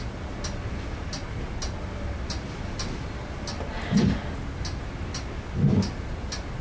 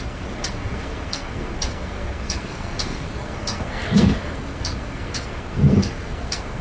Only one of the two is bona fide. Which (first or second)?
first